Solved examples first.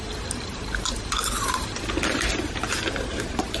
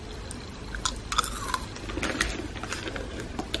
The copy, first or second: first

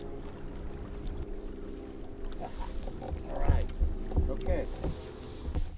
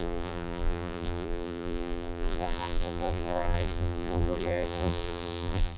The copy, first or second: second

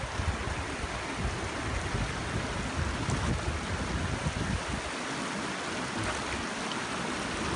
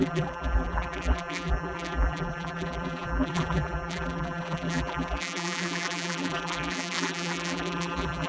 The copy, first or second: second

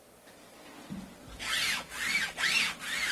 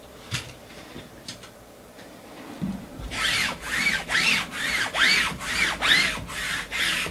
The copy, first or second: second